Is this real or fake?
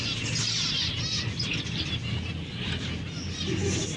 real